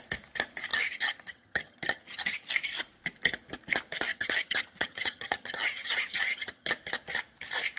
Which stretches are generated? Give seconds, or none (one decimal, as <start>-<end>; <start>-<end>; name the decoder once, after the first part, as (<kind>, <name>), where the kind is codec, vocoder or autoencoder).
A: 0.7-2.5 (vocoder, HiFi-GAN); 4.1-6.7